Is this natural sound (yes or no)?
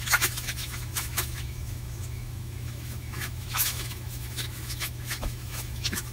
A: no